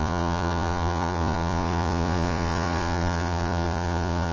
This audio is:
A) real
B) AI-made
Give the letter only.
B